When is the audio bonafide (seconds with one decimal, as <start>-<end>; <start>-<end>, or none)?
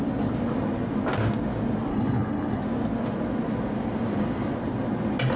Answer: 0.0-1.9; 2.6-5.4